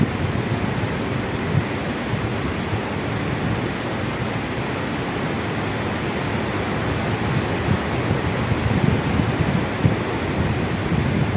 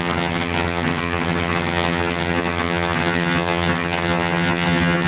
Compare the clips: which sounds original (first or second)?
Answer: first